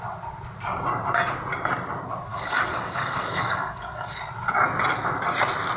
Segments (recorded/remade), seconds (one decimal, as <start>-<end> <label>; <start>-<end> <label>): 0.0-2.3 recorded; 2.3-4.2 remade; 4.2-5.8 recorded